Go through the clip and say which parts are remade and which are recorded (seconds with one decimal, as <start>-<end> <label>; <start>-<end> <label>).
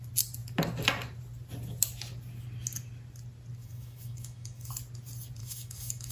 0.0-3.6 recorded; 3.6-4.7 remade; 4.7-5.4 recorded; 5.4-6.1 remade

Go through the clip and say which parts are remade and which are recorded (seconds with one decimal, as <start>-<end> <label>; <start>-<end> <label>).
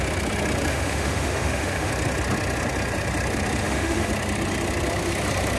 0.0-0.7 recorded; 0.7-1.9 remade; 1.9-3.6 recorded; 3.6-4.1 remade; 4.1-5.6 recorded